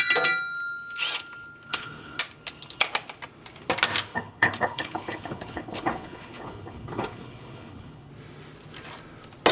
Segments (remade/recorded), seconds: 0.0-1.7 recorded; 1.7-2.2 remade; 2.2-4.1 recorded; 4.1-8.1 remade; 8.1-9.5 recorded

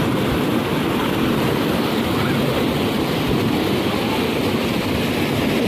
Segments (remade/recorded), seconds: 0.0-5.7 recorded

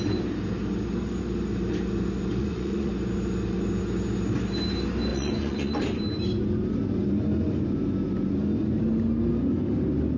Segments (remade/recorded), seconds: 0.0-2.4 recorded; 2.4-2.9 remade; 2.9-5.1 recorded; 5.1-5.8 remade; 5.8-10.2 recorded